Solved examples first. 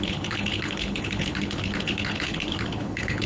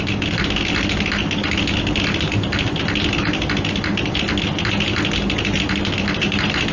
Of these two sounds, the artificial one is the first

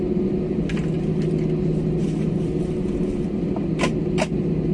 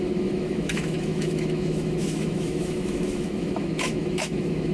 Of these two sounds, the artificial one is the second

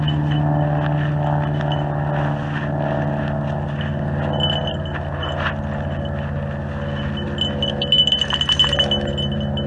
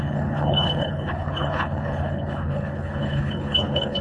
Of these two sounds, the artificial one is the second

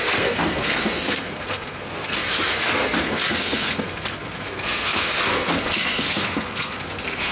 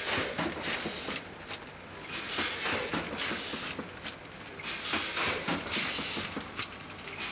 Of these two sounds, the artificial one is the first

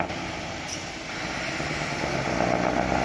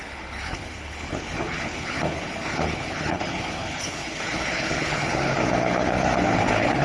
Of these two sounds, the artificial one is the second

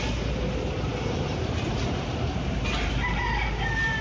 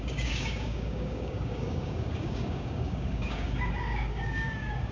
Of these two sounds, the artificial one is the second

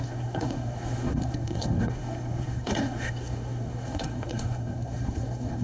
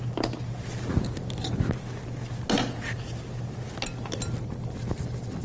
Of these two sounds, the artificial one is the first